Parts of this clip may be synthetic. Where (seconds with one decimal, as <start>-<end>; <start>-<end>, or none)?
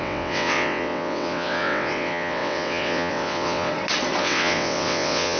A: 0.0-3.7; 4.2-5.4